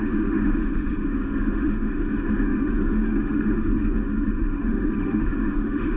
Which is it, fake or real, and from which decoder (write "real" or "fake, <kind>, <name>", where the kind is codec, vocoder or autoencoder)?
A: fake, autoencoder, DAC-VAE